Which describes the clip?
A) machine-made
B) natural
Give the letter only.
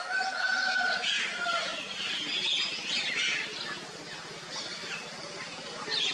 B